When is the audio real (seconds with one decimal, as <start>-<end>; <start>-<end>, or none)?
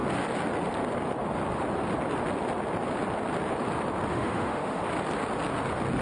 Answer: 0.0-4.1; 4.8-6.0